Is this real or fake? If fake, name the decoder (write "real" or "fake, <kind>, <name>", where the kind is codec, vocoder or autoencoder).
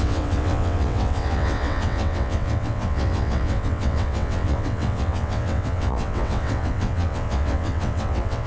fake, vocoder, WaveNeXt